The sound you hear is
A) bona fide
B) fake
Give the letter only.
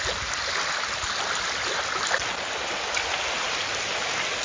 A